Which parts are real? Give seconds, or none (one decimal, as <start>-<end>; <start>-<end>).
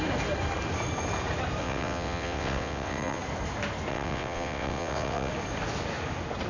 0.0-1.6; 3.2-3.9; 5.3-6.5